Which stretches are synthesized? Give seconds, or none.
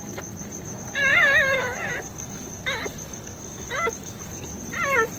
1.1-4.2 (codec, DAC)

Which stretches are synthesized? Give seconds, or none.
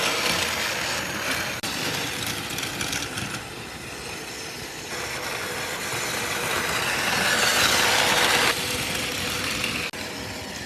none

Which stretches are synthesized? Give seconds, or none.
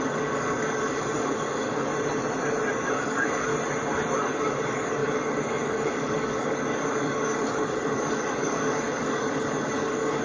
0.0-1.9 (codec, DAC); 2.7-3.5; 4.2-10.2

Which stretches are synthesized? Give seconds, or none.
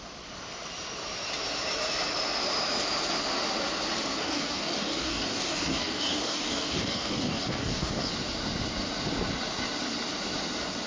4.2-8.1 (codec, DAC)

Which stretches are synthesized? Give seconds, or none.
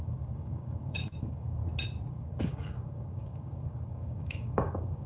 0.0-1.6 (codec, DAC); 2.1-5.1